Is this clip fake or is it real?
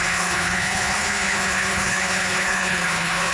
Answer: fake